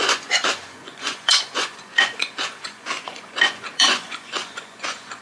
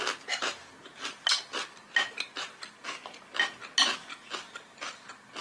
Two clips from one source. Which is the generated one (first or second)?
first